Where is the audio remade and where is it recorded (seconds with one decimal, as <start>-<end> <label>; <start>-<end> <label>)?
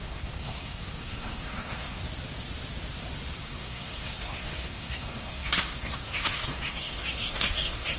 0.0-2.0 remade; 2.0-3.4 recorded; 3.4-8.0 remade